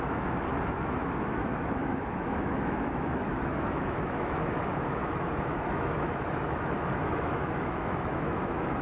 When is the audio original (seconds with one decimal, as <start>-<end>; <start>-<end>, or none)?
none